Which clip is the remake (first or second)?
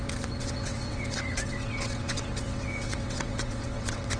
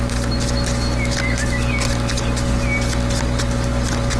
first